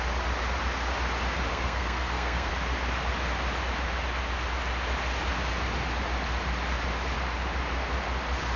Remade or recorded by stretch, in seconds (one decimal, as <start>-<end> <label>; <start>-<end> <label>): 0.0-1.5 recorded; 1.5-2.5 remade; 2.5-8.6 recorded